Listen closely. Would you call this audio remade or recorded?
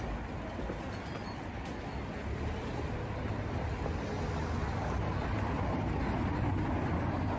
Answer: recorded